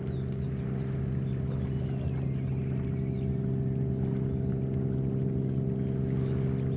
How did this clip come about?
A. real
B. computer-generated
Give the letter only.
A